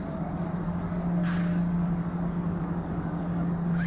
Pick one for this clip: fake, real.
fake